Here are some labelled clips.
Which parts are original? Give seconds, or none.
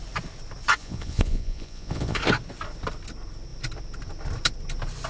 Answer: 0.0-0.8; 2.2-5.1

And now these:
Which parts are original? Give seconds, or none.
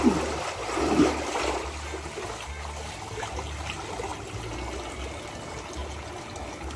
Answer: 0.0-6.8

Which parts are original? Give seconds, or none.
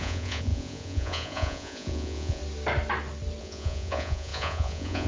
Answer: 2.4-3.4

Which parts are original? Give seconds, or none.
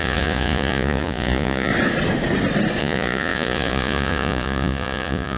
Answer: 1.7-2.8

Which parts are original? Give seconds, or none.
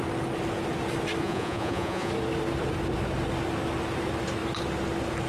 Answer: 0.0-1.2; 2.1-5.3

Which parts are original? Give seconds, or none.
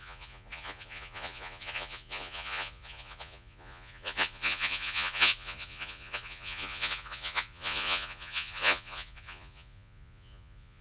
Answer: none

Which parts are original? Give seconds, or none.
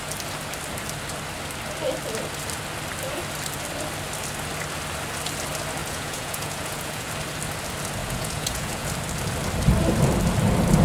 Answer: 0.0-5.8; 7.1-8.0; 8.9-10.8